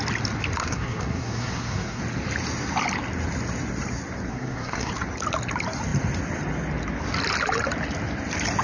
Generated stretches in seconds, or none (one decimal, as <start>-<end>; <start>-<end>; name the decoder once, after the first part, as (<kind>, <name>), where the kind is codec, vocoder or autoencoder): 0.6-2.0 (codec, SNAC); 4.3-4.9